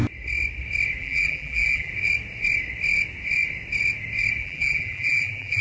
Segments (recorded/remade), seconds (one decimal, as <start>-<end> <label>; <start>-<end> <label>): 0.0-1.0 recorded; 1.0-1.9 remade; 1.9-4.4 recorded; 4.4-5.6 remade